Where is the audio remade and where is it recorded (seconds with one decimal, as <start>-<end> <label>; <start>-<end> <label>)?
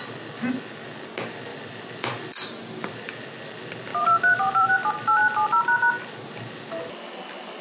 0.0-1.5 recorded; 1.5-3.3 remade; 3.3-3.9 recorded; 3.9-4.7 remade; 4.7-7.6 recorded